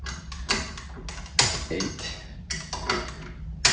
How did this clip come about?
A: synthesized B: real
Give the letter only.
B